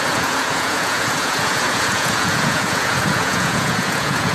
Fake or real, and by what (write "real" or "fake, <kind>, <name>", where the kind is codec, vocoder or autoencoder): fake, vocoder, Vocos